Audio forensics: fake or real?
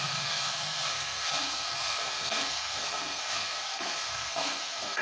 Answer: fake